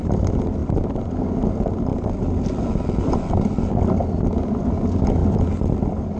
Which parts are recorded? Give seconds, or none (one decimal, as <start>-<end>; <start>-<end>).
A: 0.0-6.2